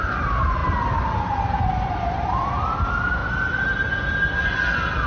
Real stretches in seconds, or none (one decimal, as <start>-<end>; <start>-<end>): 0.6-1.2; 3.2-5.1